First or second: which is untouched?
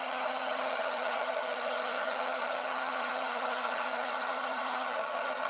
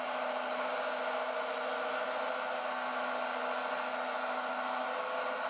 second